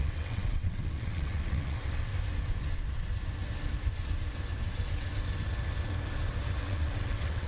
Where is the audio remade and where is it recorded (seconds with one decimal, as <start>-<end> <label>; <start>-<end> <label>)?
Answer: 0.0-2.1 remade; 2.1-6.6 recorded; 6.6-7.5 remade